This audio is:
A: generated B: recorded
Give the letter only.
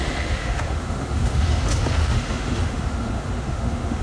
A